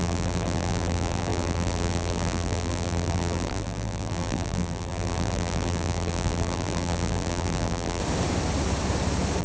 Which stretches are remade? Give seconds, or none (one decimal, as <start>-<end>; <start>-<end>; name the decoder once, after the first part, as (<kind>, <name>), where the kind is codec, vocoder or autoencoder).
0.0-8.0 (vocoder, BigVGAN v2)